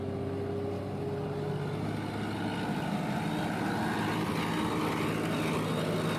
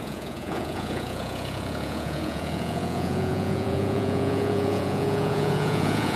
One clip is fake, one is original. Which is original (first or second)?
first